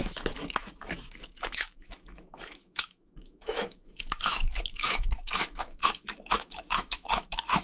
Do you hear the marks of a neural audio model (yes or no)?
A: yes